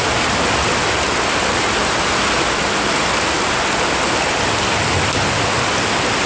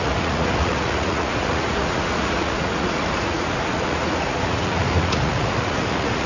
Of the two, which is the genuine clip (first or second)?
first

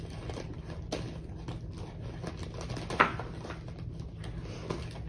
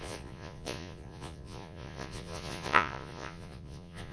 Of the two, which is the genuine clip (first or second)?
first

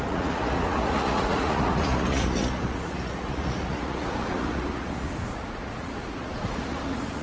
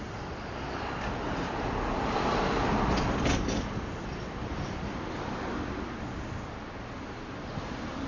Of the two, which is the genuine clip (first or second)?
second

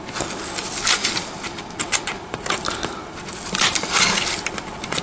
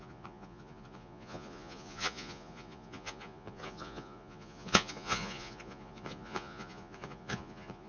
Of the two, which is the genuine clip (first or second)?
first